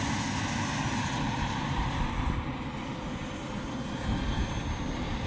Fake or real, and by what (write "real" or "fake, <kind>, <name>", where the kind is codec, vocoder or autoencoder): real